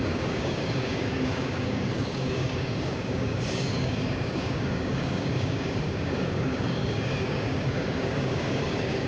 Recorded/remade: remade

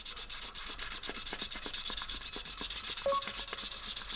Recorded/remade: recorded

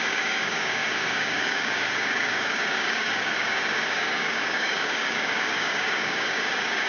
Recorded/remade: remade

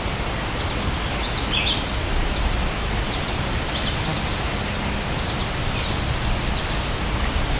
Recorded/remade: recorded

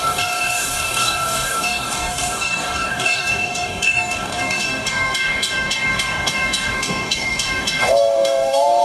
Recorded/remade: remade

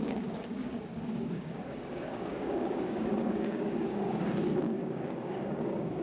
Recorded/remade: remade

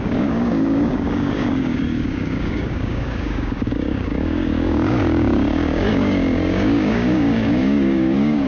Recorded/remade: remade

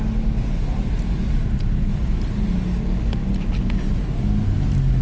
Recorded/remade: recorded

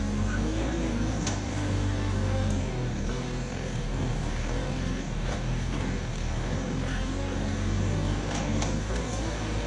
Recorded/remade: remade